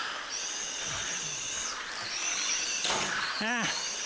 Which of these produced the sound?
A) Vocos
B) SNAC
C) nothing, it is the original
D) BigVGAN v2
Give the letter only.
C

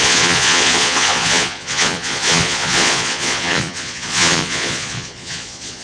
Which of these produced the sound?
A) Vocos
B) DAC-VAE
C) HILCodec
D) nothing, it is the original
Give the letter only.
A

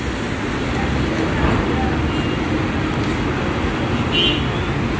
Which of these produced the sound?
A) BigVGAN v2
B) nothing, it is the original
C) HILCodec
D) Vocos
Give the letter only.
B